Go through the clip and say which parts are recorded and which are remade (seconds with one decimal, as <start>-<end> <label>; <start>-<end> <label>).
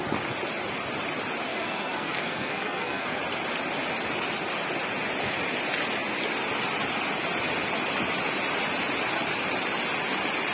0.0-1.5 recorded; 1.5-3.2 remade; 3.2-10.5 recorded